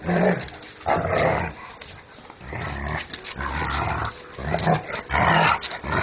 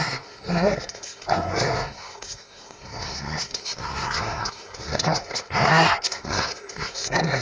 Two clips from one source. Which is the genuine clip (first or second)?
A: first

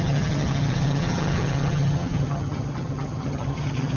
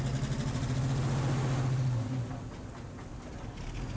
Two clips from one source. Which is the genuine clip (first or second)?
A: second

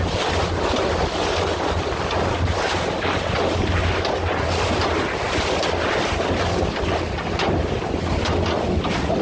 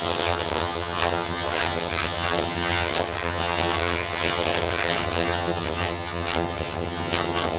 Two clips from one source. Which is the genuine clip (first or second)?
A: first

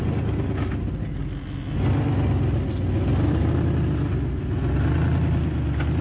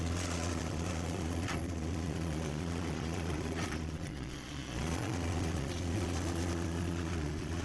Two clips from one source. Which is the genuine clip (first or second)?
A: first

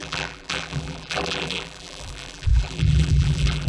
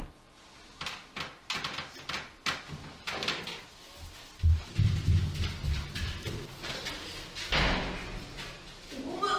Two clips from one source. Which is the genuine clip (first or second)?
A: second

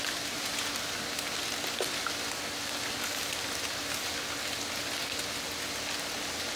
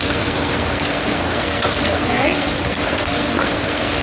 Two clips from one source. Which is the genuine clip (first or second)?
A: first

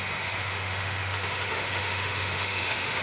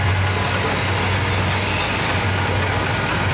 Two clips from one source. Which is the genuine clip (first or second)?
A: second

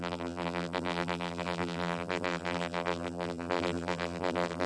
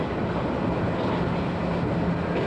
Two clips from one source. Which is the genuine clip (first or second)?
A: second